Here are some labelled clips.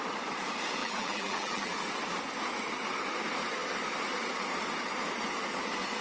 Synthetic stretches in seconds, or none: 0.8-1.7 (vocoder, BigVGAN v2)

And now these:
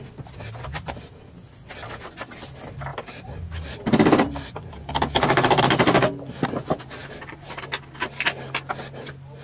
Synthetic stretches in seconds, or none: 2.9-5.6 (vocoder, BigVGAN v2); 7.0-7.7